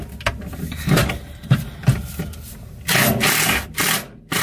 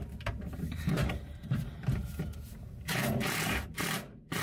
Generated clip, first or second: second